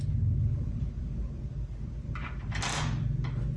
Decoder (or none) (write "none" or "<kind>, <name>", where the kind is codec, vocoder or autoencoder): none